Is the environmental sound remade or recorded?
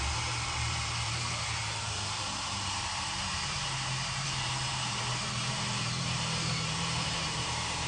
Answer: remade